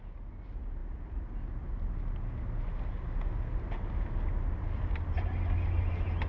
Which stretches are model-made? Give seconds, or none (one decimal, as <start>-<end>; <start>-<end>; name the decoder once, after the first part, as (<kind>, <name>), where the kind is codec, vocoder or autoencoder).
none